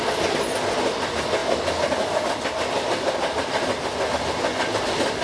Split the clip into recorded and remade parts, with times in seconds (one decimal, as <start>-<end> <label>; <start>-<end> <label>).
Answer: 0.0-5.2 recorded